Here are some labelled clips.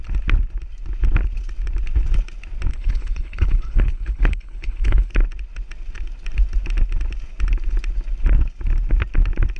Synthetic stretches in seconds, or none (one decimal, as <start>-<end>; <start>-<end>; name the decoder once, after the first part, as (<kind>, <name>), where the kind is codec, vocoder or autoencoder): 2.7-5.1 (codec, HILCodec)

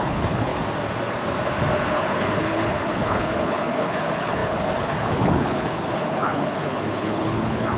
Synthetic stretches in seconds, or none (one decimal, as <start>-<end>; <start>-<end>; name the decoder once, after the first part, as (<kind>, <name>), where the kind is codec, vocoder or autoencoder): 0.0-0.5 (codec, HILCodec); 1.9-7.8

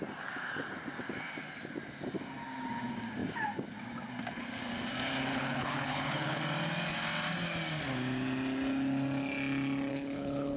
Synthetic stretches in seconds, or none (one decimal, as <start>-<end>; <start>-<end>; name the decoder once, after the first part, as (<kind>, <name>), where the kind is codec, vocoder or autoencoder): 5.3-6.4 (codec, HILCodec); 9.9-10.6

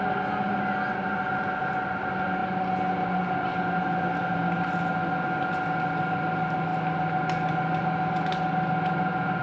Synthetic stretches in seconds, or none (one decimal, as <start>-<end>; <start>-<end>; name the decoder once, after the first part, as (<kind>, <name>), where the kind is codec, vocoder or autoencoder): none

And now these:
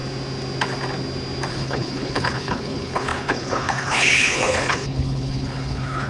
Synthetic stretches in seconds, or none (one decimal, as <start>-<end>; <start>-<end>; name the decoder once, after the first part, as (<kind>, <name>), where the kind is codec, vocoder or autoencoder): 1.5-6.1 (codec, HILCodec)

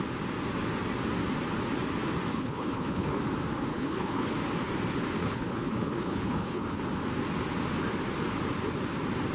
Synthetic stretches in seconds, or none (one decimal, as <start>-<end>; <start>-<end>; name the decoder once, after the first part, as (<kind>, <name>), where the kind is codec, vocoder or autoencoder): 2.3-3.2 (codec, HILCodec); 3.7-4.3; 5.2-6.8